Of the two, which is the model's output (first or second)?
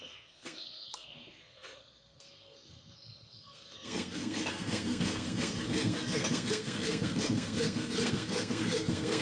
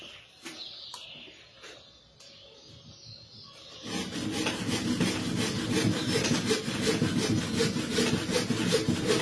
first